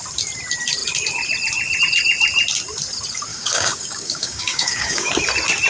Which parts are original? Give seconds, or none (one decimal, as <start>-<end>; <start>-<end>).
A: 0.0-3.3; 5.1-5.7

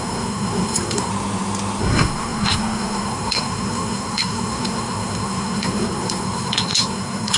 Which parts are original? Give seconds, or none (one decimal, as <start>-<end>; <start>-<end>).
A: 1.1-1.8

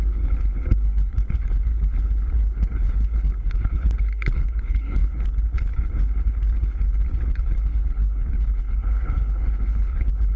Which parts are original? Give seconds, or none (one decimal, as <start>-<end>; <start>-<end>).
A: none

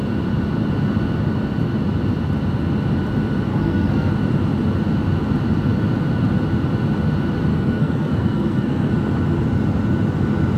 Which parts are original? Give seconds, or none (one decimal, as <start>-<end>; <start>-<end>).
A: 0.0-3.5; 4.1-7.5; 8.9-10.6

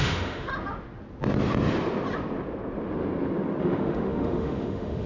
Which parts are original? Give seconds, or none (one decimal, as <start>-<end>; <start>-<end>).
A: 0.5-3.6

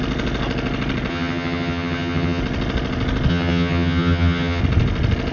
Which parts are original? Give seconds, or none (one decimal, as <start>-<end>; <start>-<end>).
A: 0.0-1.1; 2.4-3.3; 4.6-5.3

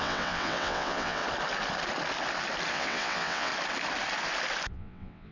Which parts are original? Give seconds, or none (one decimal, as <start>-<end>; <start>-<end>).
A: 1.2-2.7; 3.5-4.7